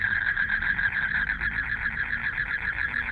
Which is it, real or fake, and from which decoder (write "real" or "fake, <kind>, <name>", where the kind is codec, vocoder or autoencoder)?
fake, vocoder, BigVGAN v2